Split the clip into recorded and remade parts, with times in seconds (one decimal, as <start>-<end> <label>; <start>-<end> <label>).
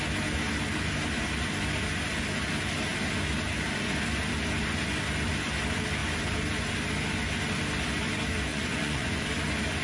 0.0-8.5 recorded; 8.5-9.2 remade; 9.2-9.8 recorded